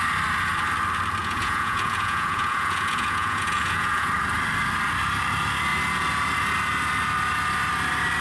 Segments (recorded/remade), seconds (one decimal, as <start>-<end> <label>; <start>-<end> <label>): 0.0-1.2 recorded; 1.2-4.1 remade; 4.1-8.2 recorded